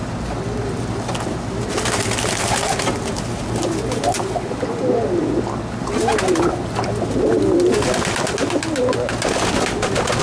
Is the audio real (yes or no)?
yes